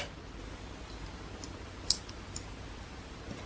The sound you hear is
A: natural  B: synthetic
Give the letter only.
A